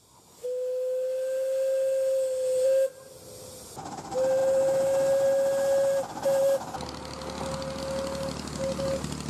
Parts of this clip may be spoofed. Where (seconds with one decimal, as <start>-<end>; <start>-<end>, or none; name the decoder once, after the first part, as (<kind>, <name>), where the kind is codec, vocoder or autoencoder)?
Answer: none